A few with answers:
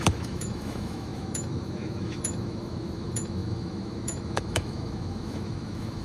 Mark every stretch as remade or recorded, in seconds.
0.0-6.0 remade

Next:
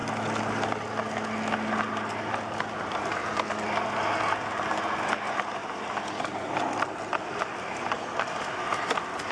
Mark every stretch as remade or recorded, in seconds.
0.0-5.6 recorded; 5.6-7.6 remade; 7.6-9.3 recorded

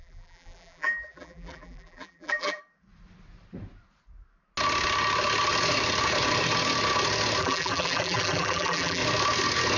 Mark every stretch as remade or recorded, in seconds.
0.0-2.6 remade; 2.6-7.4 recorded; 7.4-9.0 remade; 9.0-9.8 recorded

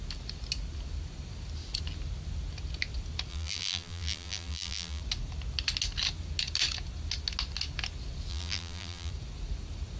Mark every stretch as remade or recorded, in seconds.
0.0-3.3 recorded; 3.3-5.0 remade; 5.0-8.3 recorded; 8.3-9.1 remade; 9.1-10.0 recorded

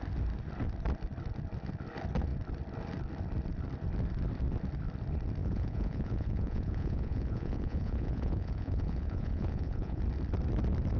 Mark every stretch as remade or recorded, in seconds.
0.0-5.4 recorded; 5.4-10.0 remade; 10.0-11.0 recorded

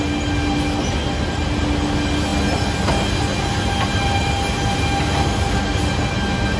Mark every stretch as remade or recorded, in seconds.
0.0-6.6 recorded

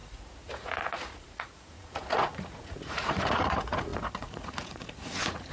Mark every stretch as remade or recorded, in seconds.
0.0-5.5 remade